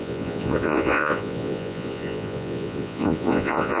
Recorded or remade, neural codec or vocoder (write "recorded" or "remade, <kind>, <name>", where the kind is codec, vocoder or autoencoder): remade, vocoder, Vocos